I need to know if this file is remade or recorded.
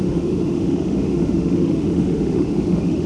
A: remade